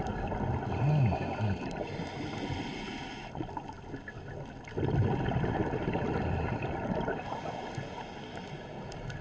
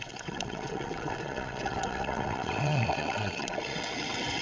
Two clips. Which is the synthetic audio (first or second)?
second